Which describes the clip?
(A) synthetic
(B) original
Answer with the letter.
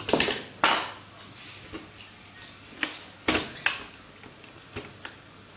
B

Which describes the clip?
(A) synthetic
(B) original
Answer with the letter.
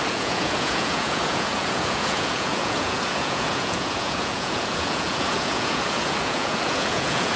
A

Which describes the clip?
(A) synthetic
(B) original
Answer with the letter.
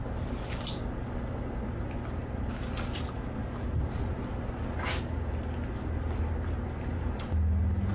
B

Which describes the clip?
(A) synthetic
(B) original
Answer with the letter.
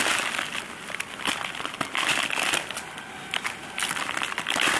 B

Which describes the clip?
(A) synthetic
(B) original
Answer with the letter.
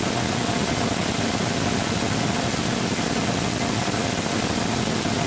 B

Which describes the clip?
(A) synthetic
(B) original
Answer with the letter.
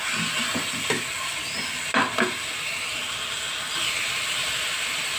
B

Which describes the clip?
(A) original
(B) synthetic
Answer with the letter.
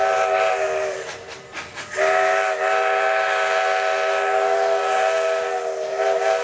A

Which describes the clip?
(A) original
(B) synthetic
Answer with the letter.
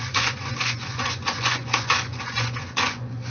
B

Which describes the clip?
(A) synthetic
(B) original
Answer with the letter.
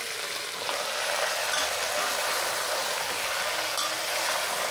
B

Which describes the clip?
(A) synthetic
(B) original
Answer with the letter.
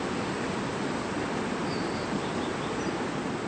B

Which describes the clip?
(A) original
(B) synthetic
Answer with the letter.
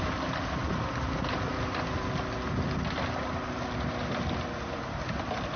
A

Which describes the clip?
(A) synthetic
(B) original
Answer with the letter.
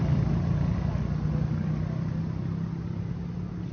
B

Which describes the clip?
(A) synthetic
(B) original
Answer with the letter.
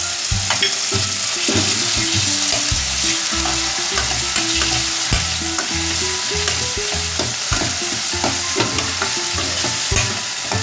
B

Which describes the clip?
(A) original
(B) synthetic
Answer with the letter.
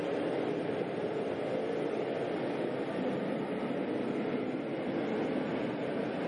A